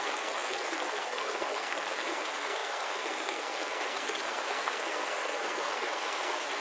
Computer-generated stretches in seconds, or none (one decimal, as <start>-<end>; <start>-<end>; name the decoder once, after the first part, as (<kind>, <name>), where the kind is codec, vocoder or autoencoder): 0.0-6.6 (codec, SNAC)